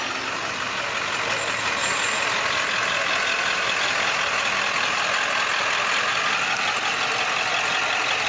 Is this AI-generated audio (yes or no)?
no